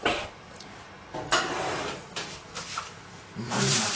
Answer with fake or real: fake